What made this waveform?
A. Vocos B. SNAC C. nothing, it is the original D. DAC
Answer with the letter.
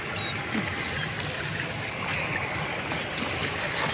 C